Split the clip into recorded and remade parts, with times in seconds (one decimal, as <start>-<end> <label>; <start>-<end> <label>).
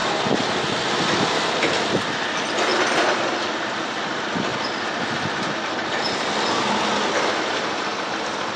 0.0-8.6 recorded